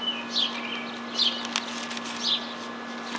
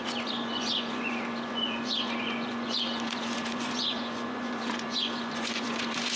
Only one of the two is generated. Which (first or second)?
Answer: second